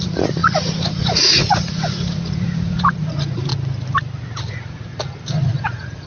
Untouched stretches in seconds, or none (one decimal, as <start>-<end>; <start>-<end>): 3.5-4.5; 4.9-5.6

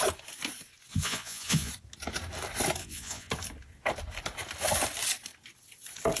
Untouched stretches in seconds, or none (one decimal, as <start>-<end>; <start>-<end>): 0.0-0.9; 1.7-2.8; 3.3-6.2

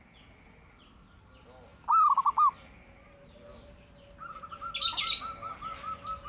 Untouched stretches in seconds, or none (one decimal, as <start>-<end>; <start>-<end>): 0.0-6.3

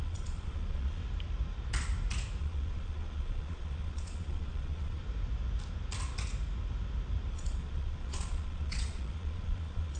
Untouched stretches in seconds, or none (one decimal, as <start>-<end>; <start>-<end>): 1.0-2.4; 5.0-7.3

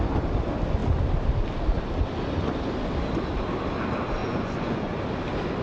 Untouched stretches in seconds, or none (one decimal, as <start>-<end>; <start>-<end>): 0.0-4.2; 4.9-5.6

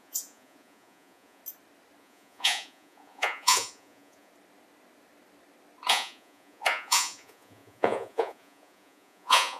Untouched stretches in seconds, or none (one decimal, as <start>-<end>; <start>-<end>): 1.4-2.0; 4.3-5.9

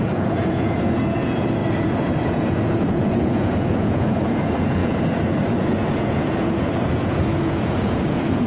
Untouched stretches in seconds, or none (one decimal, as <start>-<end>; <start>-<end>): none